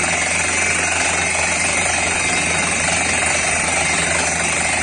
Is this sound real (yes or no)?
yes